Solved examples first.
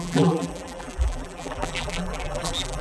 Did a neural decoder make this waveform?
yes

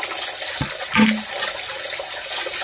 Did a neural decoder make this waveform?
no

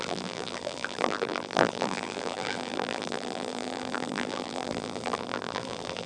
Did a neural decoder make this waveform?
yes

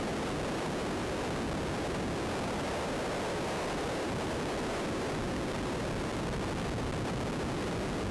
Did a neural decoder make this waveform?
yes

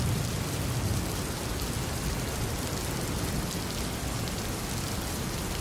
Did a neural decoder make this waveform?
no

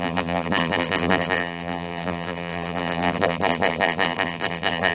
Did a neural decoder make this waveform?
yes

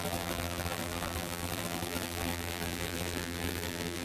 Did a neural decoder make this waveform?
yes